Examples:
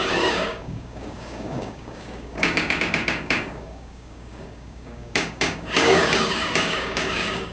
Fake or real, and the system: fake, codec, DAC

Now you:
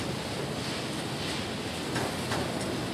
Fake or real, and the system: real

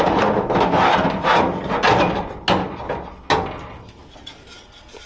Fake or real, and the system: real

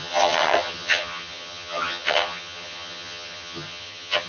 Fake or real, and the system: fake, vocoder, HiFi-GAN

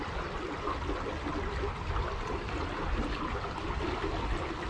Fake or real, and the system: real